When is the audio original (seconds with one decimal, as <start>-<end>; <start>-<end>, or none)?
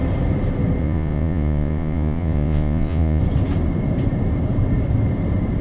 0.0-0.8; 3.2-5.6